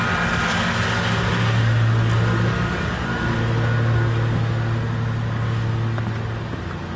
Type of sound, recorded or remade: recorded